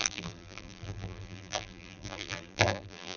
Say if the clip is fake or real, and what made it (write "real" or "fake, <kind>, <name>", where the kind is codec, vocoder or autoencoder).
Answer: fake, vocoder, BigVGAN v2